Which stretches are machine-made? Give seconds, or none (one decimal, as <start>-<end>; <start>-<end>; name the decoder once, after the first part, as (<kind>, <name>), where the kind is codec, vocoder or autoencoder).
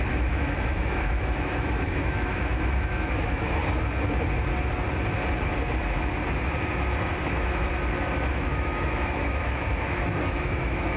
0.0-3.6 (autoencoder, DAC-VAE); 7.2-7.7; 8.3-11.0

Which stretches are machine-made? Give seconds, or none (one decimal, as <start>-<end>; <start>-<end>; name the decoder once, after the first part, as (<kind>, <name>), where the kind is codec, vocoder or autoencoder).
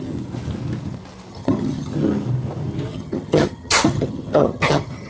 1.3-1.9 (vocoder, HiFi-GAN); 2.9-5.1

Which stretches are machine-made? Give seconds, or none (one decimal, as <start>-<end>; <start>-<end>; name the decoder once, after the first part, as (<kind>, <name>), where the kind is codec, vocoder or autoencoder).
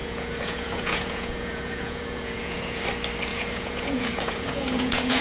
0.0-2.8 (vocoder, Vocos); 3.3-5.2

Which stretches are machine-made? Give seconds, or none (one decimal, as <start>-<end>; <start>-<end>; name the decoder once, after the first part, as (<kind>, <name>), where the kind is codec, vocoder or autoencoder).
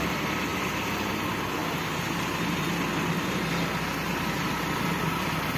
none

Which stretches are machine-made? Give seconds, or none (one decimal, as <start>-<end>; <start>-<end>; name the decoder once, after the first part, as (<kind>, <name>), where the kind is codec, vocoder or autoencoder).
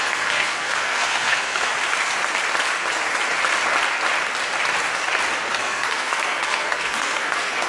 0.0-1.7 (codec, SNAC); 5.5-7.7